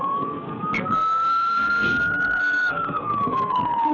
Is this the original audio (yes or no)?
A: no